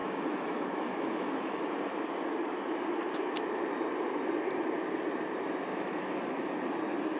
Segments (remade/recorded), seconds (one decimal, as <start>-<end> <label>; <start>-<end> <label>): 0.0-1.6 remade; 1.6-5.7 recorded; 5.7-6.4 remade; 6.4-7.2 recorded